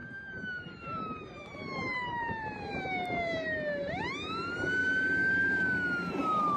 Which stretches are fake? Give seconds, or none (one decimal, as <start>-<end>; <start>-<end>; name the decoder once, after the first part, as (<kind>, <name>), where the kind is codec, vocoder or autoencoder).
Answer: 0.0-4.0 (vocoder, BigVGAN v2)